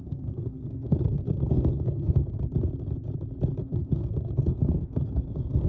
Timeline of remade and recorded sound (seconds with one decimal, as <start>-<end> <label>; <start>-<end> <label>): 0.0-2.2 remade; 2.2-3.6 recorded; 3.6-5.7 remade